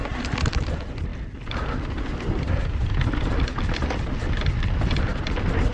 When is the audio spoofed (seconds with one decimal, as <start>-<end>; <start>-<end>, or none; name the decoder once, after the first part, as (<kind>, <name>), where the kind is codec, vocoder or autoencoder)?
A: none